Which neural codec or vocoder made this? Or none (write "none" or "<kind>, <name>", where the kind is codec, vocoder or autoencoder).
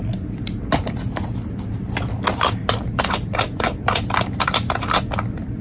none